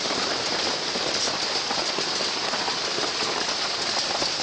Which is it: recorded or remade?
recorded